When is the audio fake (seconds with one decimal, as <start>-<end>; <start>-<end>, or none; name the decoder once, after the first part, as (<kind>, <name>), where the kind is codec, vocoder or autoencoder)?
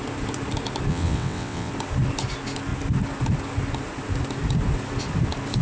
0.9-1.7 (vocoder, WaveNeXt)